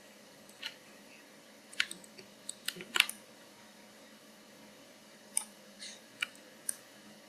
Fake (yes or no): yes